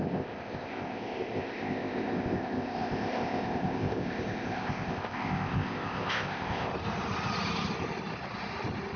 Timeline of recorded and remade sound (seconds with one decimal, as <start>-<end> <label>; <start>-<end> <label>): 0.0-6.7 remade; 6.7-9.0 recorded